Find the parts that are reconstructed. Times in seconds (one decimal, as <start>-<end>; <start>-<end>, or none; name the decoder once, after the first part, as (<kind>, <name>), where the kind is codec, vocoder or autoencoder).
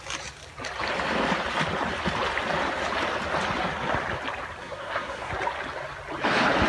4.6-5.3 (codec, SNAC)